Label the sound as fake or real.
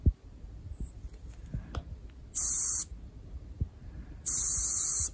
real